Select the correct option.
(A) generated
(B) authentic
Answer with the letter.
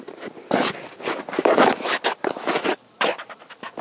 B